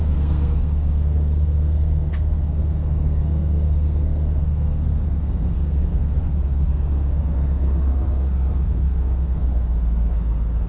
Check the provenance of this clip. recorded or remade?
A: remade